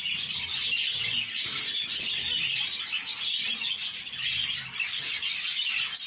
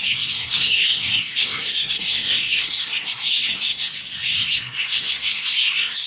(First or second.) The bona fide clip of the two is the first